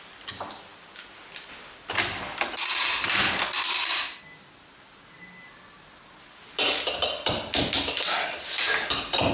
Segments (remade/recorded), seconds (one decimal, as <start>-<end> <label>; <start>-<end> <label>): 0.0-9.3 recorded